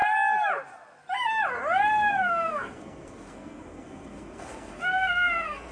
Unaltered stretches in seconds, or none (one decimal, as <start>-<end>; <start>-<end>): 0.0-2.1